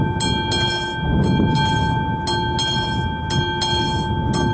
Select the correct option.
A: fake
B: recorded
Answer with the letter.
B